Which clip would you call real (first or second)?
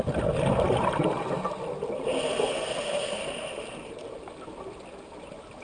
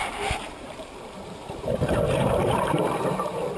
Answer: first